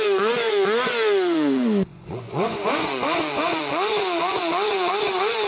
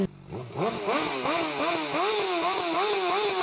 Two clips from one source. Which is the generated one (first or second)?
first